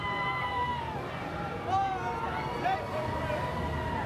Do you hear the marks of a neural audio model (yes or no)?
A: no